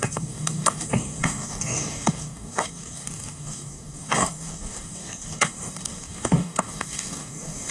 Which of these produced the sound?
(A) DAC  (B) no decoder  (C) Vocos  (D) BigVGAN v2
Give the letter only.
A